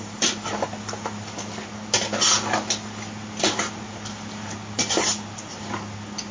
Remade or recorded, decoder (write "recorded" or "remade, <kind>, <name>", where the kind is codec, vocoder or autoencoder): recorded